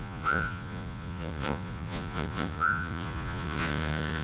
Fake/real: fake